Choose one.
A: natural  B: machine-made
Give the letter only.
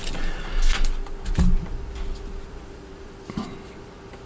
A